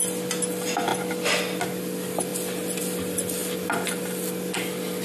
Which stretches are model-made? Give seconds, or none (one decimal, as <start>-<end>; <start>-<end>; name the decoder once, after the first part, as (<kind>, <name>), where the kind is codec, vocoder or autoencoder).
none